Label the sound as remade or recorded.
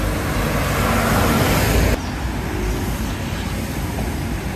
recorded